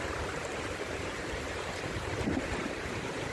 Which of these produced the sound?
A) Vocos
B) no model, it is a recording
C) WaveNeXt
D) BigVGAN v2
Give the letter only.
D